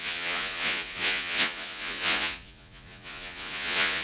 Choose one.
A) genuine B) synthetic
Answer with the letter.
B